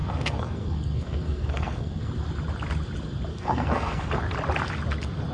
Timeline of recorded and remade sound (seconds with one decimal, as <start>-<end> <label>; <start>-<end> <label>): 0.0-2.1 remade; 2.1-3.3 recorded; 3.3-4.1 remade; 4.1-5.3 recorded